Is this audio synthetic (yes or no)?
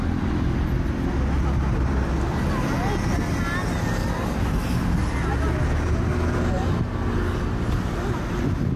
no